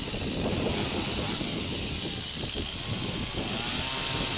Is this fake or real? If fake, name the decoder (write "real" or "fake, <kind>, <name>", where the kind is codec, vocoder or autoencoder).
real